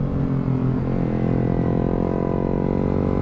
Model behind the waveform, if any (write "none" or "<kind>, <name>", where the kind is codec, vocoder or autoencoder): none